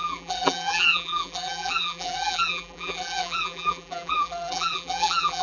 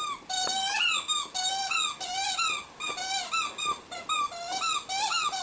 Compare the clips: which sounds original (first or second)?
second